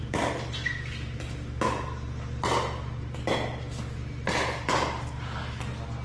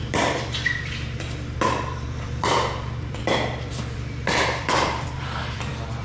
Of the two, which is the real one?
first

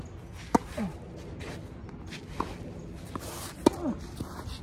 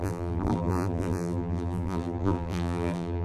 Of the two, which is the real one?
first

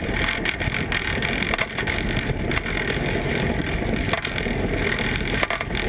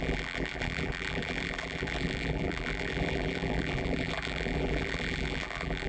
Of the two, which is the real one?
first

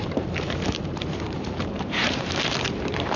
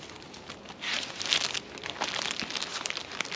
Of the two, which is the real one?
second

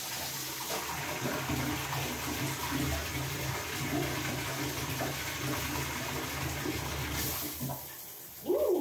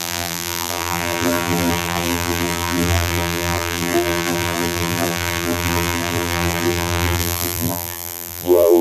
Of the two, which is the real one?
first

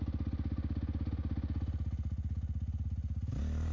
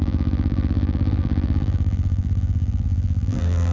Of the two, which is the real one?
first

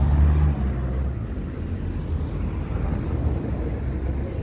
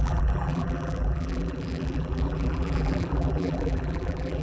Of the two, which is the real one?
first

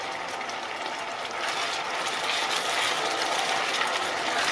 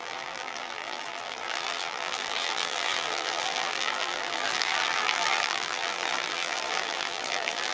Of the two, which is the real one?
first